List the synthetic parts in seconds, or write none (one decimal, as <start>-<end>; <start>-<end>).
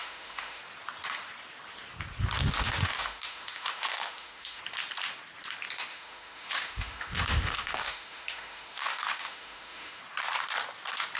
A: 0.0-0.6; 2.4-4.6; 5.9-10.0